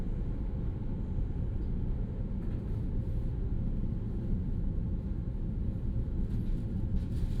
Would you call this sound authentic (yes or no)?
yes